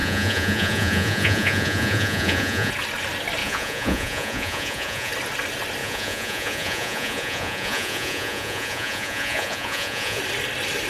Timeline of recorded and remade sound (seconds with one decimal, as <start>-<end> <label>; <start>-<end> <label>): 0.0-2.7 remade; 2.7-3.4 recorded; 3.4-5.1 remade; 5.1-5.8 recorded; 5.8-10.2 remade; 10.2-10.9 recorded